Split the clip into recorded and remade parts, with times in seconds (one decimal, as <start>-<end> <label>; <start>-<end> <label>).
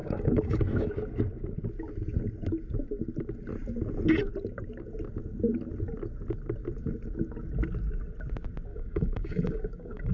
0.0-0.9 remade; 0.9-8.7 recorded; 8.7-10.1 remade